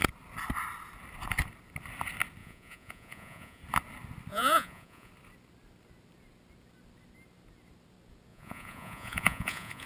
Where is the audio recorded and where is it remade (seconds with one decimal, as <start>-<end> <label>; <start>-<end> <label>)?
0.0-2.4 recorded; 2.4-3.6 remade; 3.6-4.3 recorded; 4.3-5.1 remade; 5.1-8.3 recorded; 8.3-9.9 remade